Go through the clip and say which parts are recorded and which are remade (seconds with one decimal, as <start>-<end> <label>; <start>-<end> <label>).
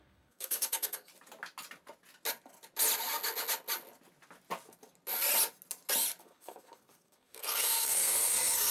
0.0-1.1 remade; 1.1-6.2 recorded; 6.2-8.7 remade